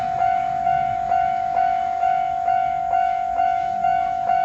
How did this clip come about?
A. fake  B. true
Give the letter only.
A